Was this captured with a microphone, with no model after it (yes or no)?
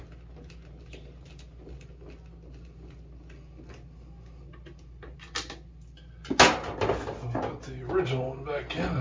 yes